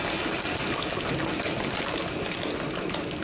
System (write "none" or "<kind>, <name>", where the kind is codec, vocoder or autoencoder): none